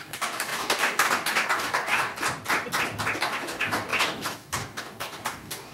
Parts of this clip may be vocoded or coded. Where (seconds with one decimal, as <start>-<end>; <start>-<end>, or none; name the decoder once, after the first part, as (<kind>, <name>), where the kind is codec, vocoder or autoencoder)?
0.0-2.1 (codec, DAC); 3.2-5.7